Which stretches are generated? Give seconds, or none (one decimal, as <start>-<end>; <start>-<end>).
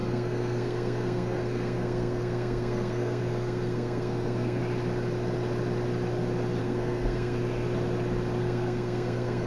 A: 0.0-4.6; 6.6-7.4; 8.4-9.5